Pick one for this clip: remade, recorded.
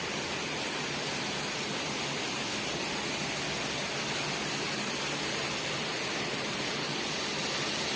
recorded